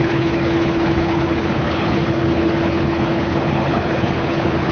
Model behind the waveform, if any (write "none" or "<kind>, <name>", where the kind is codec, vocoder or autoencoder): codec, HILCodec